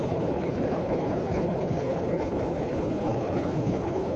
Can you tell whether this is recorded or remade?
remade